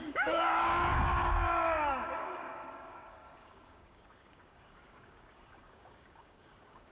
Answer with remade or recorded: remade